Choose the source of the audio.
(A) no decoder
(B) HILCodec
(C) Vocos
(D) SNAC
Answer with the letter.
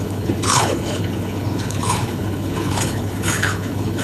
B